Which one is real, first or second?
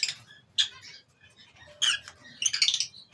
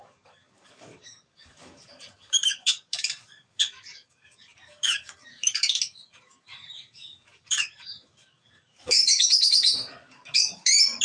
first